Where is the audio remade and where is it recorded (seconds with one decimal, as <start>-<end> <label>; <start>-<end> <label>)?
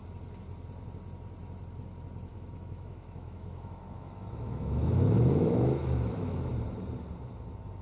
0.0-2.3 recorded; 2.3-6.5 remade; 6.5-7.8 recorded